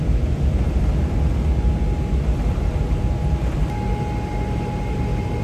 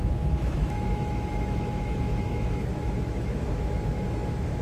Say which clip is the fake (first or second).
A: second